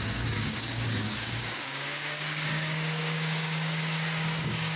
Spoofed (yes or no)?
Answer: yes